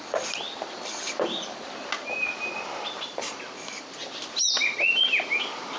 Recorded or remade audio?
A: recorded